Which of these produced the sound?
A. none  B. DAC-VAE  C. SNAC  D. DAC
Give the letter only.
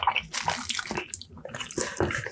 A